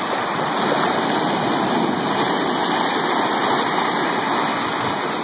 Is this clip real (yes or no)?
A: yes